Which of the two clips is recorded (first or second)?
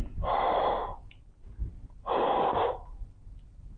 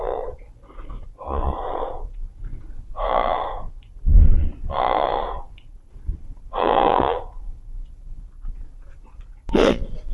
first